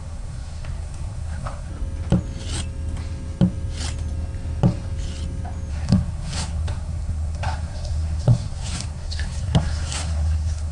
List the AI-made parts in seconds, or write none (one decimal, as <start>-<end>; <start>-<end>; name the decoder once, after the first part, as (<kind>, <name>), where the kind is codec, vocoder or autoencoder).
0.0-1.7 (codec, SNAC); 5.7-10.7